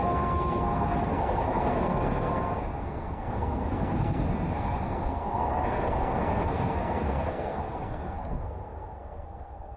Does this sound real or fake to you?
fake